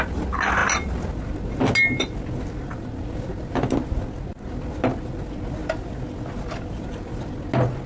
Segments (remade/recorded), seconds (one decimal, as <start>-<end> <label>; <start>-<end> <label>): 0.0-7.9 recorded